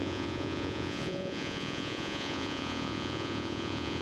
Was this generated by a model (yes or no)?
yes